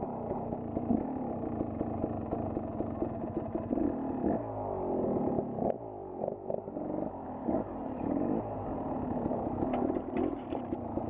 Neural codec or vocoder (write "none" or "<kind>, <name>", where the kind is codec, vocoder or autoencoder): none